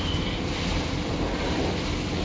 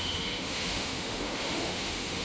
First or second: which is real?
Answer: first